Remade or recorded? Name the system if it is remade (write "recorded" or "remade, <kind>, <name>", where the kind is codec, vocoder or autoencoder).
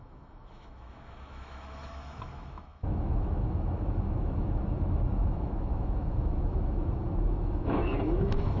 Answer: remade, autoencoder, DAC-VAE